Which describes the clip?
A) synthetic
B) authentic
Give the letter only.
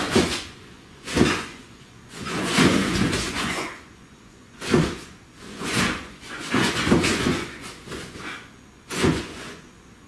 A